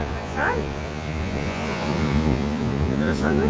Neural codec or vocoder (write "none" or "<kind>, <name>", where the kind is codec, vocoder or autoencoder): vocoder, Vocos